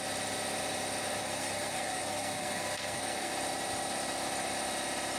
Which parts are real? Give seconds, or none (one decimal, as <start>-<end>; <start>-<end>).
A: 0.0-1.2; 3.3-5.2

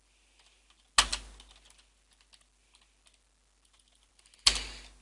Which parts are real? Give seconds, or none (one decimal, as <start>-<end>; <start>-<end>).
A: 0.0-5.0

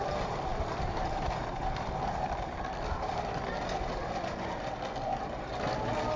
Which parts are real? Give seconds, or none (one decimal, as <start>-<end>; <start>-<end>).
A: 0.0-6.2

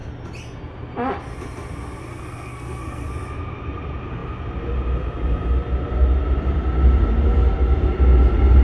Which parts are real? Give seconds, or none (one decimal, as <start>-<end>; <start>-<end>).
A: 0.0-2.1; 3.1-8.6

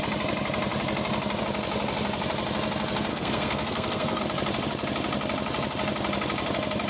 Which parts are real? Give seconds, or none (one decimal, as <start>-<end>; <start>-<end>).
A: 0.0-3.1; 4.2-6.9

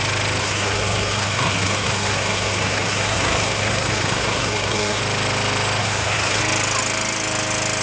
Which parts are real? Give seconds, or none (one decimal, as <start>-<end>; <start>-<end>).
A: 0.0-0.4; 5.0-5.8; 6.4-7.8